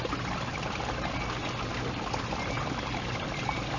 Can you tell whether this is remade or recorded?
recorded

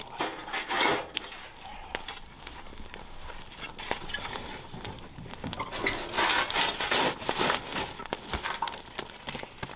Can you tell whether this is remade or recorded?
recorded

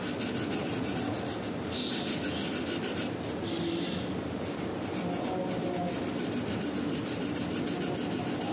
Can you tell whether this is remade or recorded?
recorded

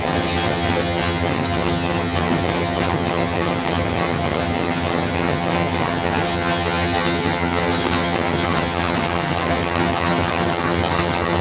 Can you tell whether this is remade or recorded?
remade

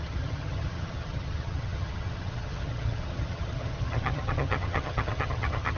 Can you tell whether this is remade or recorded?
remade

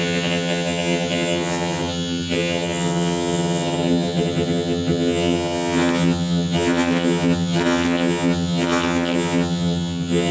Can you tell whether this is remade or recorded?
remade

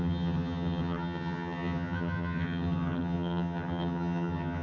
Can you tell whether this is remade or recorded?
remade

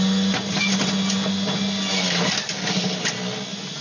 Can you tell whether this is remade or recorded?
recorded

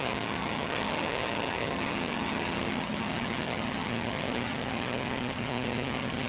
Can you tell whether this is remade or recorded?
remade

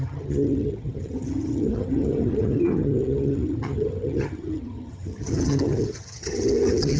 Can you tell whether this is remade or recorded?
remade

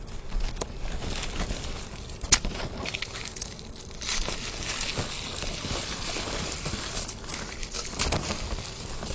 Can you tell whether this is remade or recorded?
recorded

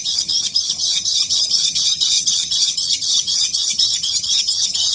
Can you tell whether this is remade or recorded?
remade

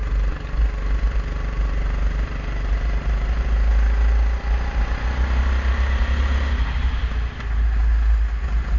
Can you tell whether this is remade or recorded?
recorded